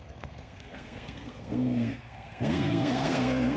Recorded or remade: remade